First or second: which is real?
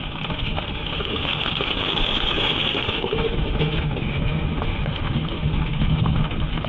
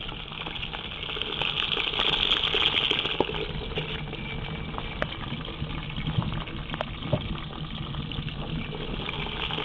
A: second